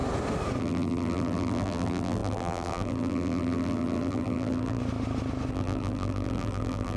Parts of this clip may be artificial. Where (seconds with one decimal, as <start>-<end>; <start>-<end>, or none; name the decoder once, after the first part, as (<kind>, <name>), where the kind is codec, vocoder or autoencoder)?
0.6-4.8 (vocoder, BigVGAN v2); 5.5-7.0